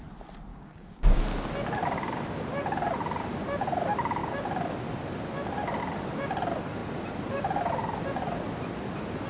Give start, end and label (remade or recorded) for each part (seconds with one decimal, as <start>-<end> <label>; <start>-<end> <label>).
0.0-0.5 recorded; 0.5-1.2 remade; 1.2-9.3 recorded